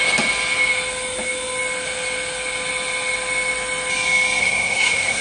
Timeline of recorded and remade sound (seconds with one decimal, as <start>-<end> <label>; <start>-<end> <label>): 0.0-4.4 recorded; 4.4-5.2 remade